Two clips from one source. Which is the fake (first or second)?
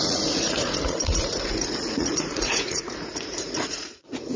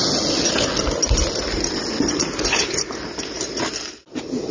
first